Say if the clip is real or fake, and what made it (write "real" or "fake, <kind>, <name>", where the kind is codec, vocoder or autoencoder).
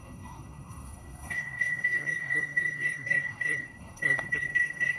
fake, codec, SNAC